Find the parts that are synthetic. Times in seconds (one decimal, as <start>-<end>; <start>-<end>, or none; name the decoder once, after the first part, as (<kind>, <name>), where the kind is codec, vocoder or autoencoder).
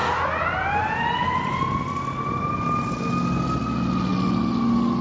none